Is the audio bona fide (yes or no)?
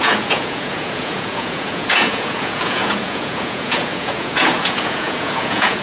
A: no